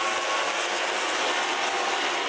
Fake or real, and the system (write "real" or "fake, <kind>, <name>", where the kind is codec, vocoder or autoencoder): real